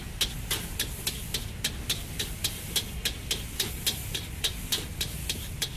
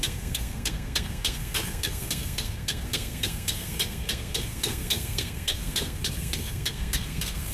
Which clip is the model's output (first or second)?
second